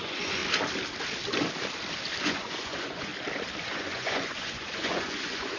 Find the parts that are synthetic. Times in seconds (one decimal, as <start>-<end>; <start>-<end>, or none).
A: 0.0-0.4; 2.2-3.1; 3.6-5.6